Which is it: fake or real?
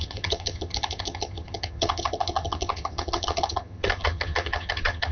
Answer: fake